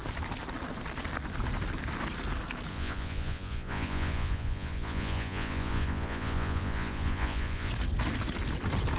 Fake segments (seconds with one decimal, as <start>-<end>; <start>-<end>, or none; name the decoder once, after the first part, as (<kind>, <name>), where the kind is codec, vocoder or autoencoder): 2.7-7.7 (vocoder, Vocos)